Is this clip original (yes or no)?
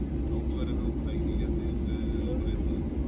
yes